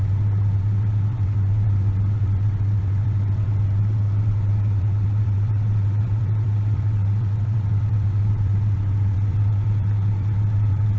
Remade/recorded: remade